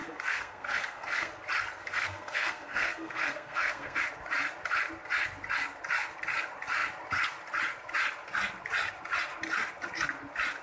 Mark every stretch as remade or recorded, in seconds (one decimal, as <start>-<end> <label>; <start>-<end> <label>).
0.0-1.3 remade; 1.3-1.8 recorded; 1.8-4.0 remade; 4.0-10.6 recorded